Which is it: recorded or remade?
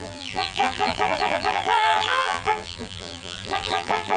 remade